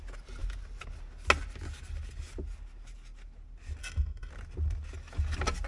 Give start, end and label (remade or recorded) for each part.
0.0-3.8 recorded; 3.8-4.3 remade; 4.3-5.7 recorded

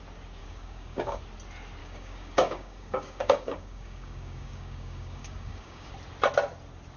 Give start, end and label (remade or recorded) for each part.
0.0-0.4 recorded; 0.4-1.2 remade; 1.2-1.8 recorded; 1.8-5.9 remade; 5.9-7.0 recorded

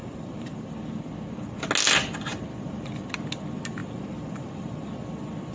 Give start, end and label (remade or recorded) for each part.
0.0-0.6 remade; 0.6-3.8 recorded; 3.8-4.9 remade; 4.9-5.5 recorded